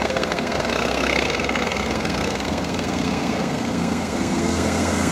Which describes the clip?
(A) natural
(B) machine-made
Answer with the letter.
B